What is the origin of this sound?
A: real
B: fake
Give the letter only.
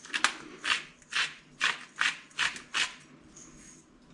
A